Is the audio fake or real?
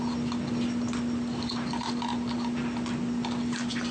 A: real